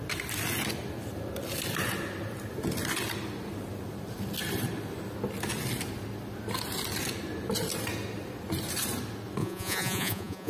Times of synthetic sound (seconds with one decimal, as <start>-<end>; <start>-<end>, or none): 9.4-10.5